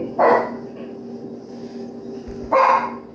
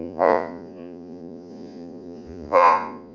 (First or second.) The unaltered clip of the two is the first